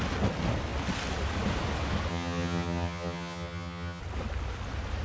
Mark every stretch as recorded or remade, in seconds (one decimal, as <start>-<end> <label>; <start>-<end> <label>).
0.0-2.1 recorded; 2.1-4.0 remade; 4.0-5.0 recorded